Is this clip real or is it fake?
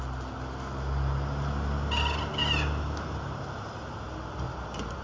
real